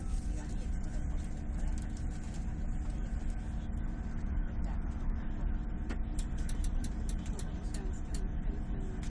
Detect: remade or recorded recorded